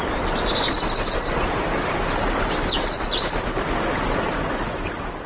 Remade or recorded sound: recorded